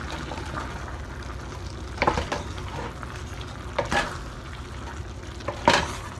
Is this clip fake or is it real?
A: real